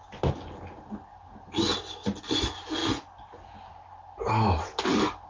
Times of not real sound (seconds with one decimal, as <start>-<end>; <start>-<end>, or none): none